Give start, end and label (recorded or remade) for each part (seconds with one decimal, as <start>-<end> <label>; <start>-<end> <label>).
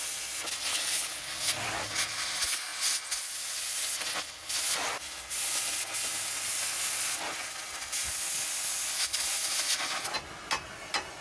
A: 0.0-0.7 recorded; 0.7-1.3 remade; 1.3-11.2 recorded